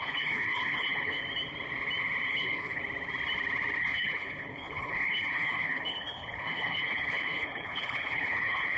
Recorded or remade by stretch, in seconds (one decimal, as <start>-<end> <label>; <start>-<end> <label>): 0.0-1.2 remade; 1.2-2.3 recorded; 2.3-2.8 remade; 2.8-3.8 recorded; 3.8-8.8 remade